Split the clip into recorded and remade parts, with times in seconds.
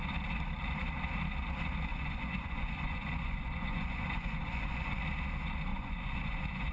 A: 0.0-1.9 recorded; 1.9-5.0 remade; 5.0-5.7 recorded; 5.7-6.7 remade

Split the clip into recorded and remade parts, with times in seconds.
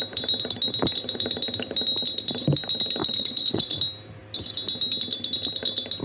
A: 0.0-3.0 recorded; 3.0-3.8 remade; 3.8-6.0 recorded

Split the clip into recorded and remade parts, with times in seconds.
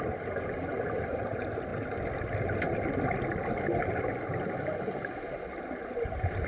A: 0.0-6.5 recorded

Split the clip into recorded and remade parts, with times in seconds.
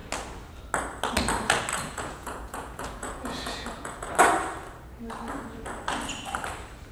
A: 0.0-1.7 recorded; 1.7-4.1 remade; 4.1-6.9 recorded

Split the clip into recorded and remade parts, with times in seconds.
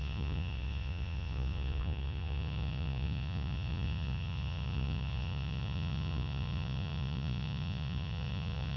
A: 0.0-8.8 remade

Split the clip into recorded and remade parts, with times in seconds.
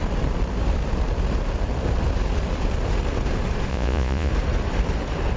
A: 0.0-3.7 recorded; 3.7-4.3 remade; 4.3-5.4 recorded